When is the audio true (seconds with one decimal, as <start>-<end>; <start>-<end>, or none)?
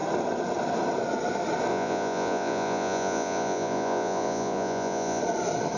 0.0-1.7; 5.2-5.8